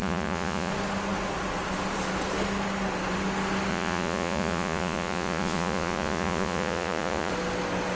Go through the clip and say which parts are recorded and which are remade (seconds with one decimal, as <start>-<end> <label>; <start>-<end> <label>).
0.0-0.7 remade; 0.7-3.7 recorded; 3.7-7.3 remade; 7.3-8.0 recorded